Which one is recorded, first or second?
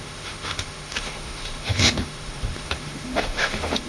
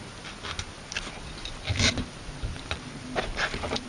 second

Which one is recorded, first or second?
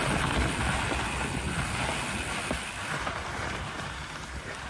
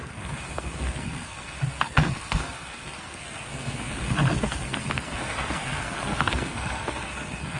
first